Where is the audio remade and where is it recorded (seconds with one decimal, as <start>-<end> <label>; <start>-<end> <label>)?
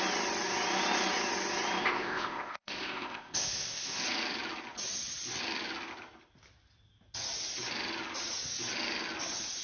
0.0-1.8 recorded; 1.8-4.0 remade; 4.0-9.6 recorded